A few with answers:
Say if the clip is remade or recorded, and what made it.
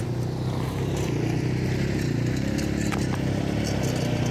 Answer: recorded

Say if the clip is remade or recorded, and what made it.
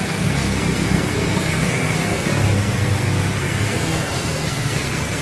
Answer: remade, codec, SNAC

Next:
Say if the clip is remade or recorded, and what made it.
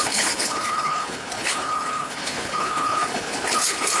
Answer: remade, codec, HILCodec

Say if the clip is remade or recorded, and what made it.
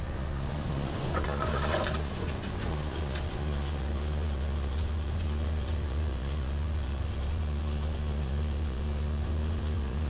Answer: remade, vocoder, Vocos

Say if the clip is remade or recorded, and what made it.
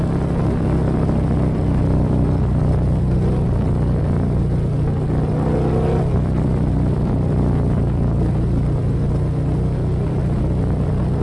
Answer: recorded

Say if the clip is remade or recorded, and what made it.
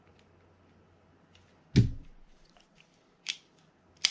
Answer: recorded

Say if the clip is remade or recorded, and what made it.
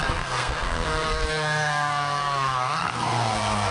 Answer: remade, codec, SNAC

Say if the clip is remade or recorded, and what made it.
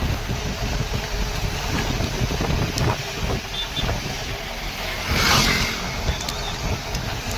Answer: recorded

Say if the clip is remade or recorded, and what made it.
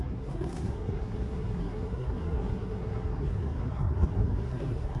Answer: remade, codec, SNAC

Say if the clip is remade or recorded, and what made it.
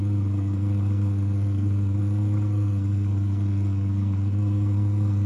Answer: remade, codec, SNAC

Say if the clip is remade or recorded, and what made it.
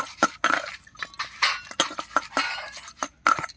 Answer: recorded